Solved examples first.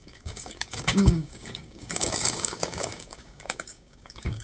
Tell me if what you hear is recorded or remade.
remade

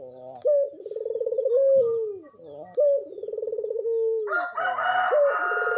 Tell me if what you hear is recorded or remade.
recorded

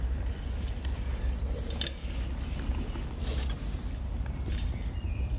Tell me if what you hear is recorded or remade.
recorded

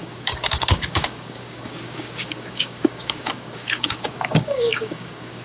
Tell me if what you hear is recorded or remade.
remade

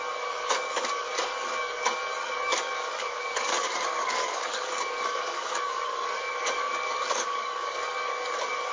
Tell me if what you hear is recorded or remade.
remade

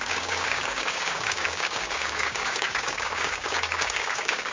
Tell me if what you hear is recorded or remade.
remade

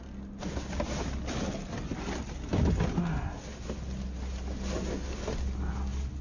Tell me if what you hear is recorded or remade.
recorded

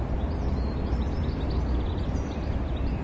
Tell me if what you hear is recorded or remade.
recorded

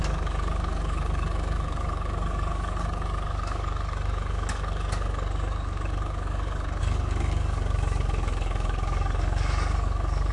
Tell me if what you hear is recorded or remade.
remade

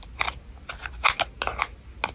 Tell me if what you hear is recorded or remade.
recorded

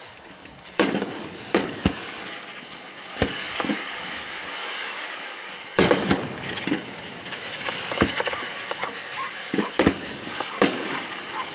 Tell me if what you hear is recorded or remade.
remade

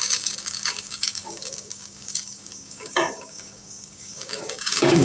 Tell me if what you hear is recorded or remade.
remade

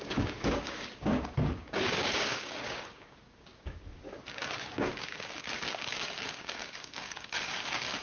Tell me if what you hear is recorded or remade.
remade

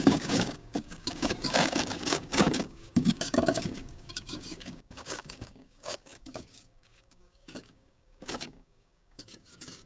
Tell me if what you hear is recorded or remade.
remade